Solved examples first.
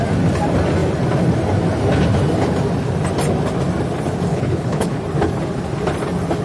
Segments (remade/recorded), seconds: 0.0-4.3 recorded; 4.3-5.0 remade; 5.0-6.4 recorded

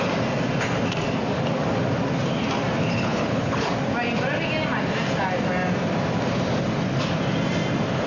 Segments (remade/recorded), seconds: 0.0-2.8 recorded; 2.8-3.7 remade; 3.7-8.1 recorded

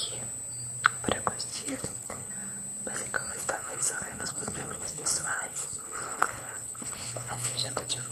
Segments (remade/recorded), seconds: 0.0-1.5 recorded; 1.5-2.3 remade; 2.3-3.3 recorded; 3.3-8.1 remade

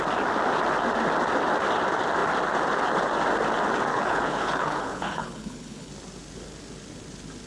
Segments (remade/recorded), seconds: 0.0-3.9 recorded; 3.9-5.9 remade; 5.9-7.5 recorded

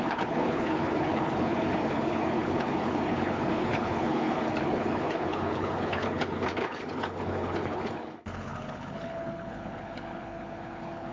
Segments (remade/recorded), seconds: 0.0-11.1 remade

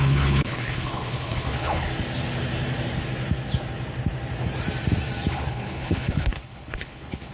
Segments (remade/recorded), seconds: 0.0-1.9 remade; 1.9-5.3 recorded; 5.3-7.3 remade

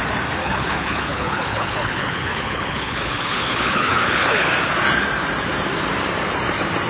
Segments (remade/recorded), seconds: 0.0-0.4 recorded; 0.4-4.5 remade; 4.5-6.9 recorded

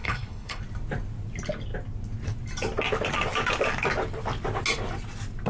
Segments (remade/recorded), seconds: 0.0-0.6 remade; 0.6-5.5 recorded